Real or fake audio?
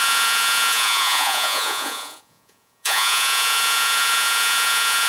fake